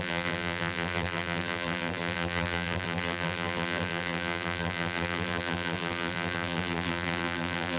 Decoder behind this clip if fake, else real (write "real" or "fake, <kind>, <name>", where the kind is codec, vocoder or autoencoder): fake, vocoder, BigVGAN v2